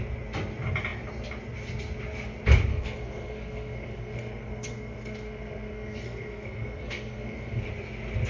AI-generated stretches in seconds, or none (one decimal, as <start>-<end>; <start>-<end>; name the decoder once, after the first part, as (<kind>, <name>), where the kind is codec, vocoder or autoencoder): 2.7-7.7 (codec, SNAC)